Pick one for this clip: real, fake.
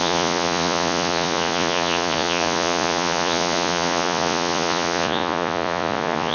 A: fake